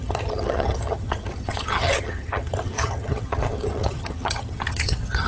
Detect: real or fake fake